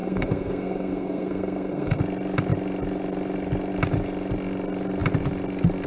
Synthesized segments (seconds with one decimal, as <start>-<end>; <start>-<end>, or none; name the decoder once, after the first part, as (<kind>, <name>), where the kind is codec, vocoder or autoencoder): 0.0-2.0 (codec, SNAC)